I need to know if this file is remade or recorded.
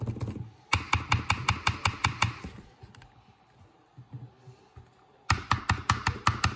recorded